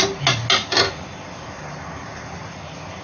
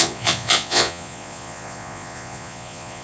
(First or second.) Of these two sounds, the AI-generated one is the second